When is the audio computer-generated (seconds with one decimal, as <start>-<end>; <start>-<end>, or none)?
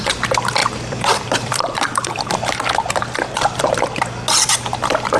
0.6-3.7